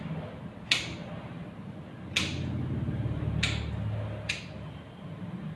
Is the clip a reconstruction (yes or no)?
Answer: no